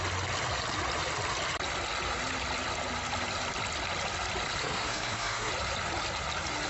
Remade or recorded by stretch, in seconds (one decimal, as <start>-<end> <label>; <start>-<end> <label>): 0.0-4.6 recorded; 4.6-5.5 remade; 5.5-6.7 recorded